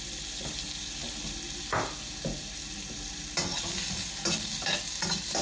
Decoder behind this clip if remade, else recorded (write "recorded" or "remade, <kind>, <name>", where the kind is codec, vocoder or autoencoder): recorded